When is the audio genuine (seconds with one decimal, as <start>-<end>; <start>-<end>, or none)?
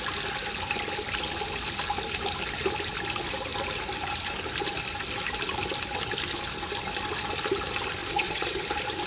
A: 0.0-8.0; 8.6-9.1